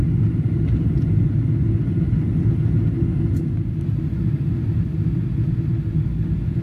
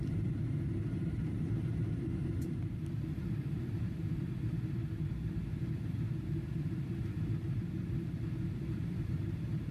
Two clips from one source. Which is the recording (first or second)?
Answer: first